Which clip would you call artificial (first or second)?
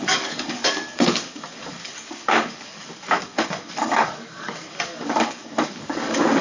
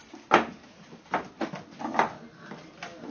first